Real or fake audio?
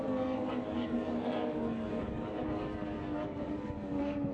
fake